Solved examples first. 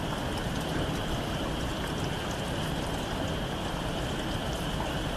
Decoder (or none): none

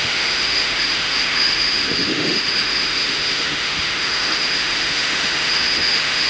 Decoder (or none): autoencoder, DAC-VAE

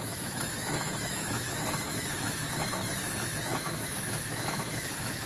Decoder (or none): autoencoder, DAC-VAE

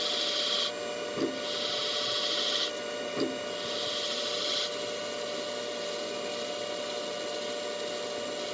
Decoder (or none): none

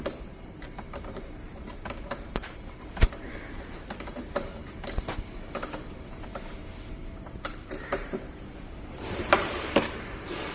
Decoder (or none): vocoder, BigVGAN v2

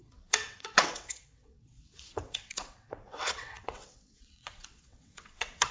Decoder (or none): vocoder, WaveNeXt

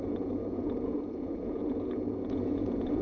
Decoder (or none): vocoder, Vocos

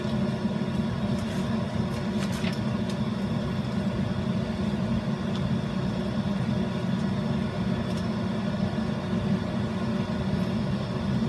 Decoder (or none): none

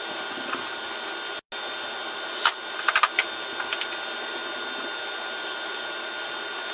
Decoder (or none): none